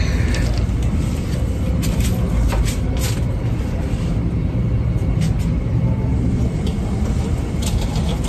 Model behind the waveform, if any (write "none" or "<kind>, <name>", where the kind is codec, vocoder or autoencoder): none